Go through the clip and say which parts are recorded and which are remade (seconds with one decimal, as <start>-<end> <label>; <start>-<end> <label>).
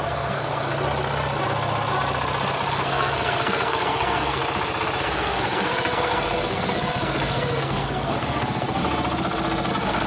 0.0-0.7 remade; 0.7-2.7 recorded; 2.7-4.4 remade; 4.4-5.0 recorded; 5.0-8.8 remade; 8.8-9.7 recorded; 9.7-10.1 remade